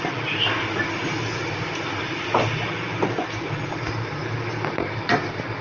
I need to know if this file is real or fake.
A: real